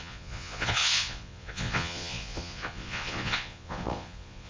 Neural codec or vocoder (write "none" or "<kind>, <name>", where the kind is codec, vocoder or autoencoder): vocoder, Vocos